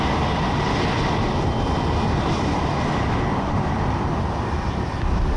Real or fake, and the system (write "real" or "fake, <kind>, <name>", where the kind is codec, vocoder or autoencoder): real